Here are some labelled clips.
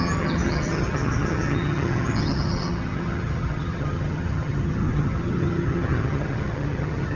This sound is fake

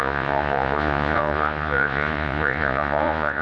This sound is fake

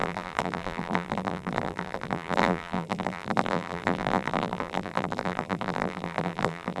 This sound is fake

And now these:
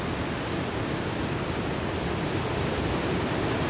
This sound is real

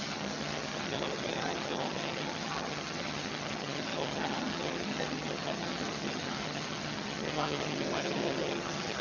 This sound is fake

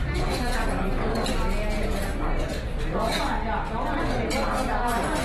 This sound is real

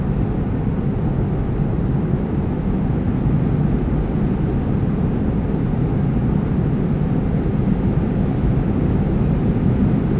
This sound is real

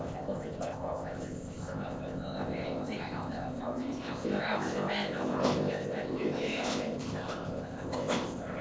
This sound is fake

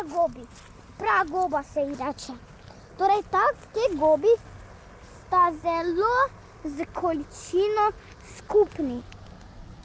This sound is real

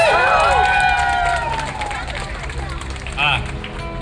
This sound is real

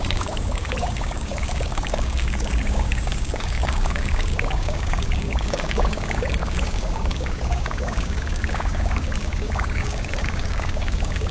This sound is fake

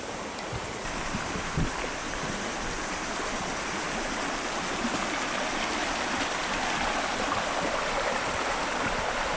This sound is real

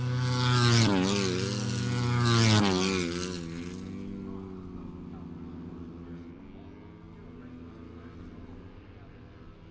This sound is real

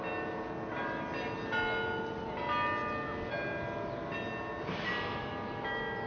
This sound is real